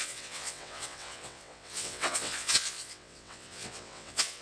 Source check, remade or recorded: remade